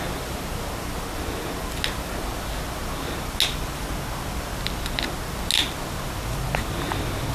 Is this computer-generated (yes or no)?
no